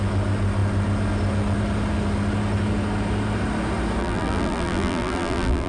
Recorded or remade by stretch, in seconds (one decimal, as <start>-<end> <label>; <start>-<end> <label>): 0.0-4.0 recorded; 4.0-5.7 remade